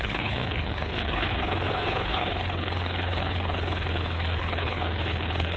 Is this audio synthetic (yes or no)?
yes